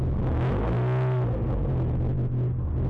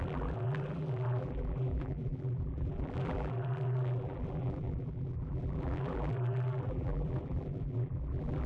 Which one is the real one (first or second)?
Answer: first